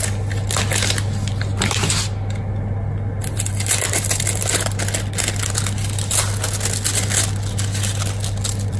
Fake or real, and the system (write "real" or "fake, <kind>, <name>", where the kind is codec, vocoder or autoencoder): real